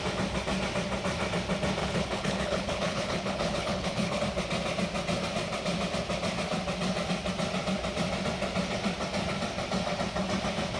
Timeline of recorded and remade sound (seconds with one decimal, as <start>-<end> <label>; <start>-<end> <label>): 0.0-1.8 recorded; 1.8-4.2 remade; 4.2-10.8 recorded